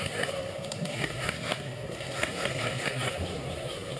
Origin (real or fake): fake